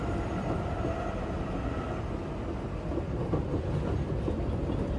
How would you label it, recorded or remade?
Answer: recorded